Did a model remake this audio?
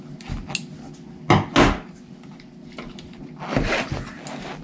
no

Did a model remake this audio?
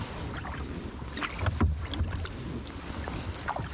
yes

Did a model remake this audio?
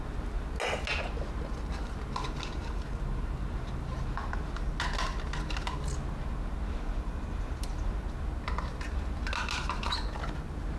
no